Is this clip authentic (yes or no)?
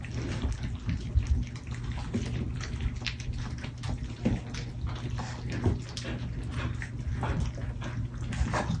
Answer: yes